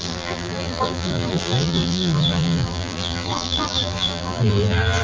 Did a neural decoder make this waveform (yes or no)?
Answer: yes